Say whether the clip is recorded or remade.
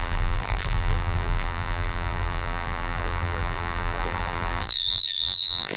remade